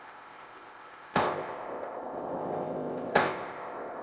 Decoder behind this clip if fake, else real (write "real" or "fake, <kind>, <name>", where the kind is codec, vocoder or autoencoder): fake, codec, ZipCodec